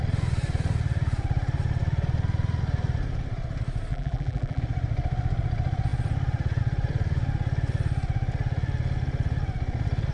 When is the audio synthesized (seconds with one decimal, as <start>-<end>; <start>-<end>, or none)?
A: 3.9-4.6